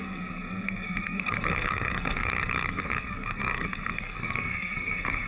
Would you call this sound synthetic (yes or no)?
yes